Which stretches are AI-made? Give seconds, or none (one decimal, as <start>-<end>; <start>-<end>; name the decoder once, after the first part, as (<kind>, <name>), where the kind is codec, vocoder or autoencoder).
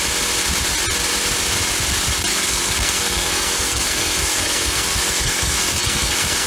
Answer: 2.3-6.5 (codec, SNAC)